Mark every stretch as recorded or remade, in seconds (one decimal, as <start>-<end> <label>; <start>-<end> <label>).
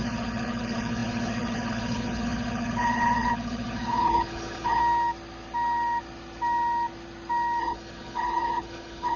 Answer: 0.0-4.8 remade; 4.8-7.6 recorded; 7.6-9.2 remade